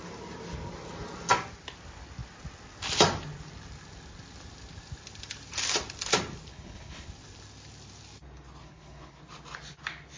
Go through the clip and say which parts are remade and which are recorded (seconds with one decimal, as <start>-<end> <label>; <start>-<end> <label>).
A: 0.0-6.5 recorded; 6.5-7.1 remade; 7.1-8.6 recorded; 8.6-9.2 remade; 9.2-10.2 recorded